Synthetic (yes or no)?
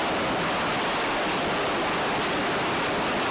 no